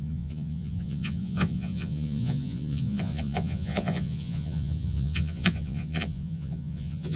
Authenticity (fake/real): fake